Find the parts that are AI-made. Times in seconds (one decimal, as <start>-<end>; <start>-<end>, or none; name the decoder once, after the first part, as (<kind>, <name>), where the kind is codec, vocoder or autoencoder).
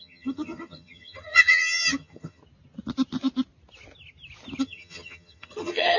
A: 0.0-2.4 (vocoder, HiFi-GAN); 4.6-6.0